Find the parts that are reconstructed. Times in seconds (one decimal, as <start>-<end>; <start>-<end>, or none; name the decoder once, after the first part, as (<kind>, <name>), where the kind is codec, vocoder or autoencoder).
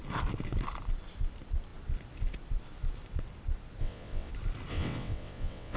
3.8-4.3 (vocoder, WaveNeXt); 4.7-5.8